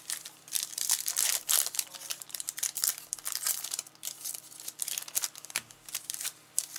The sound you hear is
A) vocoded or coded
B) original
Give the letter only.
A